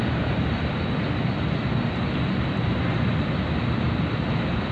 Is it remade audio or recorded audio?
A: recorded